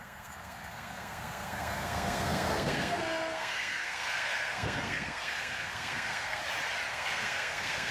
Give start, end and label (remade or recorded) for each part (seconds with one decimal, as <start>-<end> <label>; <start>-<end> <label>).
0.0-6.4 remade; 6.4-6.9 recorded; 6.9-7.9 remade